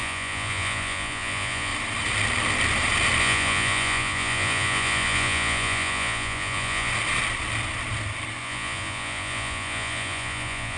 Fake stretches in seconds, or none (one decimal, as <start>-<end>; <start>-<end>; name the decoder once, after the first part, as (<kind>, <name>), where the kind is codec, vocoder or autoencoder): 0.0-1.7 (vocoder, Vocos); 3.2-6.9; 8.4-10.8